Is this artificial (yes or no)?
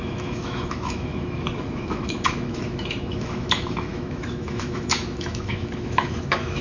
yes